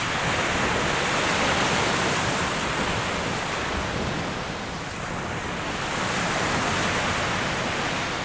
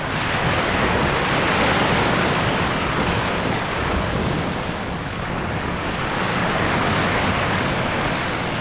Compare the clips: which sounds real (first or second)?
first